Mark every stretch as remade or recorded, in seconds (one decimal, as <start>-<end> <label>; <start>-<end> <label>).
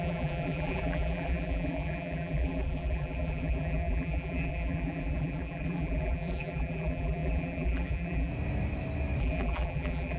0.0-8.3 remade; 8.3-9.2 recorded; 9.2-10.2 remade